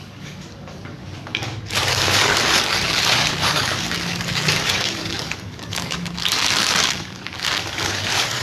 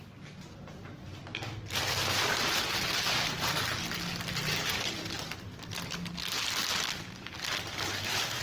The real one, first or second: second